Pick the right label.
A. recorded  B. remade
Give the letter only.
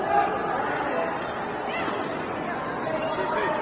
A